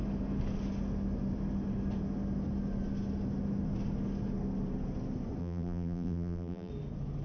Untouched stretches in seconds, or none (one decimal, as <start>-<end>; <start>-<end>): 0.0-5.4; 6.7-7.2